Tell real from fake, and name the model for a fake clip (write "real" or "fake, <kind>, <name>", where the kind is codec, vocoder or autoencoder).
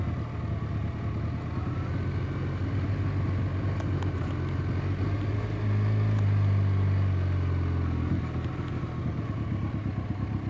real